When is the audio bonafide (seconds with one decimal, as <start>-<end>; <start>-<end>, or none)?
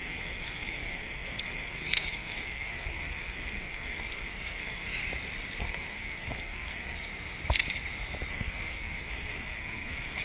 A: 4.9-5.6; 7.1-8.3